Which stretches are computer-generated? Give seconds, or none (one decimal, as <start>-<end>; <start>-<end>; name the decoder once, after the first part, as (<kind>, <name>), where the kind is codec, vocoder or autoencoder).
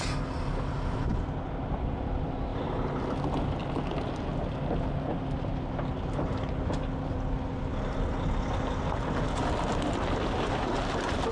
none